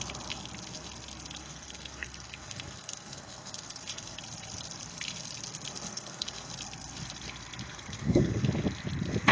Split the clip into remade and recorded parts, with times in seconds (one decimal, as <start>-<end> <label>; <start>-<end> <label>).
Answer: 0.0-1.4 recorded; 1.4-4.2 remade; 4.2-5.9 recorded; 5.9-6.5 remade; 6.5-7.7 recorded; 7.7-8.4 remade; 8.4-9.3 recorded